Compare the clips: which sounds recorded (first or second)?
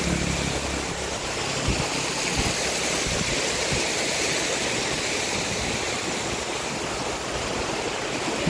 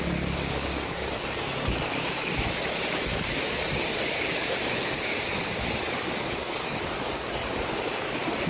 first